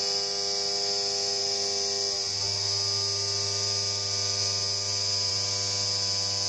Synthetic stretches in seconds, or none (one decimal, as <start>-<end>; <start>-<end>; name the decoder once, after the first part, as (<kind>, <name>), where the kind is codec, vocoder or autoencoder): none